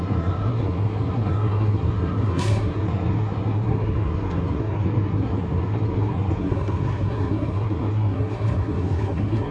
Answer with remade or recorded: remade